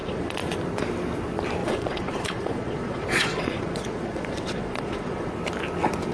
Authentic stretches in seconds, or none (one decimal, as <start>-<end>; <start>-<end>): 0.6-1.6; 5.3-6.1